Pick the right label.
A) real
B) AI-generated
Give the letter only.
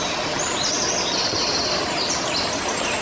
A